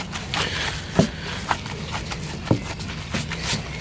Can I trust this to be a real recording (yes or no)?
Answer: yes